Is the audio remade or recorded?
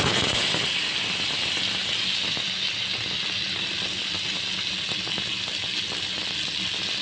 recorded